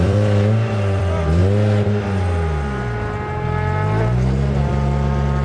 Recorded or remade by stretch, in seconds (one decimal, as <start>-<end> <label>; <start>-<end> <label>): 0.0-1.4 remade; 1.4-4.6 recorded; 4.6-5.4 remade